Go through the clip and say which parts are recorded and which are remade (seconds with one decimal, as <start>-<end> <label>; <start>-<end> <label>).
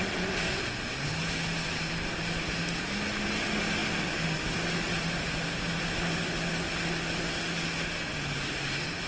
0.0-9.1 recorded